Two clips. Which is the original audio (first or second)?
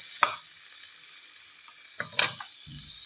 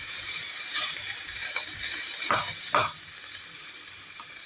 first